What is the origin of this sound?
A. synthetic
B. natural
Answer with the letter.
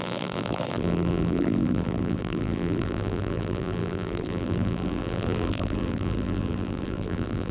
A